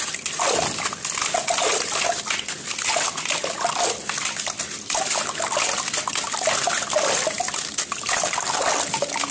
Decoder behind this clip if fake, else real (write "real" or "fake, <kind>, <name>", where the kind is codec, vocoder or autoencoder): real